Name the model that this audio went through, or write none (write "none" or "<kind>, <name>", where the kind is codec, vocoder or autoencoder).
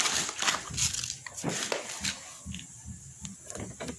none